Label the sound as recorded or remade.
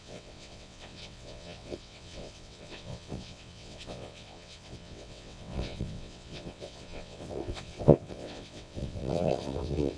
remade